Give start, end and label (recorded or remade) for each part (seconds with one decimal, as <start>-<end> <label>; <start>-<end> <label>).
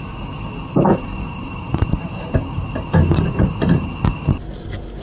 0.0-0.9 recorded; 0.9-3.9 remade; 3.9-5.0 recorded